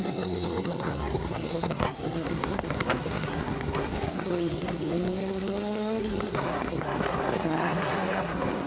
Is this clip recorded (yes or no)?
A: no